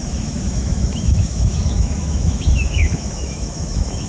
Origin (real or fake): fake